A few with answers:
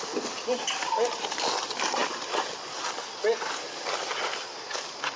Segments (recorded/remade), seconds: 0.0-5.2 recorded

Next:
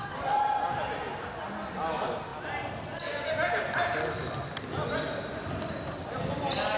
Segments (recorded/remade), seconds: 0.0-6.8 recorded

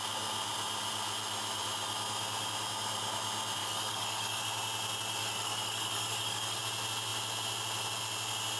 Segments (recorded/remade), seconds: 0.0-3.6 recorded; 3.6-4.4 remade; 4.4-5.2 recorded; 5.2-6.6 remade; 6.6-8.6 recorded